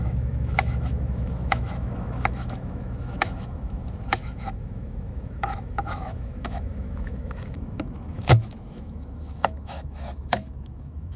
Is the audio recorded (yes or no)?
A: no